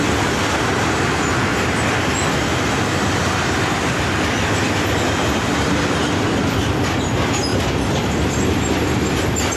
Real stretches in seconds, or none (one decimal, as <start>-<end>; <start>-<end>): 0.0-9.6